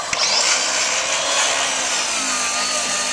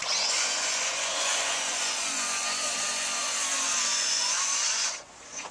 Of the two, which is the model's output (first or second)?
second